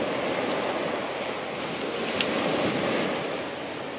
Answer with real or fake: real